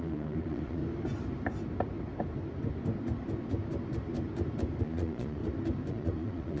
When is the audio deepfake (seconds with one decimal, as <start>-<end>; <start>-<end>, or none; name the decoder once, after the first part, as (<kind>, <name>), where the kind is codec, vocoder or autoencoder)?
0.0-0.8 (vocoder, Vocos); 4.8-5.4; 5.9-6.6